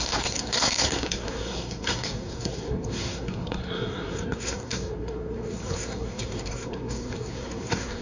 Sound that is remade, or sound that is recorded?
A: remade